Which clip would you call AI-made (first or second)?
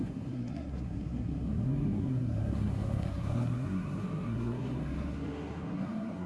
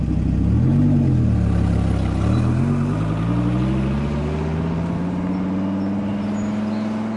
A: first